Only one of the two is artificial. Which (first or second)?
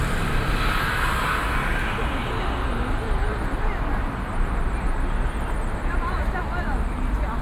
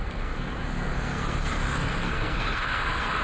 second